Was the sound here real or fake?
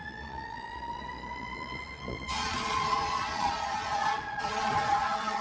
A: fake